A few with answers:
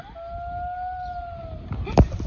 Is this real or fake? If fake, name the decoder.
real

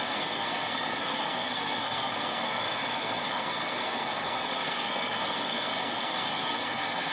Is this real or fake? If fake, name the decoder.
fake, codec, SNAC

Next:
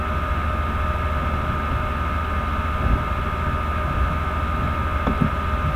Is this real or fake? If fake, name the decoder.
real